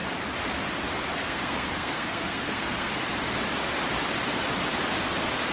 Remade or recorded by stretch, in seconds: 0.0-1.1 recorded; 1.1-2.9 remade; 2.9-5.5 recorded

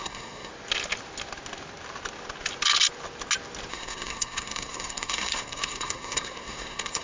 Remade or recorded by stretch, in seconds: 0.0-0.5 remade; 0.5-3.7 recorded; 3.7-7.0 remade

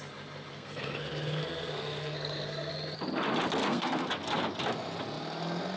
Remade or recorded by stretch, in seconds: 0.0-0.5 recorded; 0.5-2.7 remade; 2.7-3.6 recorded; 3.6-4.1 remade; 4.1-5.8 recorded

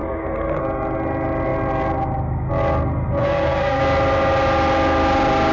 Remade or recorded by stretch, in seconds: 0.0-0.6 remade; 0.6-3.2 recorded; 3.2-3.8 remade; 3.8-5.5 recorded

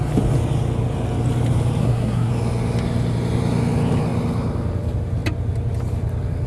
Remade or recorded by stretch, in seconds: 0.0-1.8 recorded; 1.8-2.3 remade; 2.3-6.5 recorded

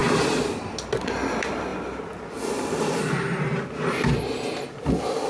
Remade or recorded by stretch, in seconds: 0.0-5.3 recorded

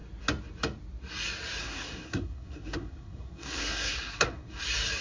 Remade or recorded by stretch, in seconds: 0.0-1.6 recorded; 1.6-4.6 remade; 4.6-5.0 recorded